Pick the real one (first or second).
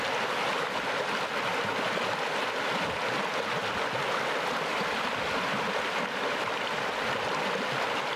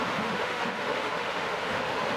first